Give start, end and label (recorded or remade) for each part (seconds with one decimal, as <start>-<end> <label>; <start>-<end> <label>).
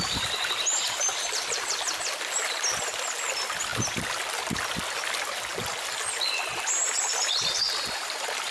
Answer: 0.0-8.5 recorded